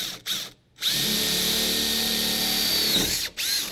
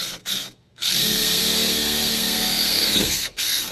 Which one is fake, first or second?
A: second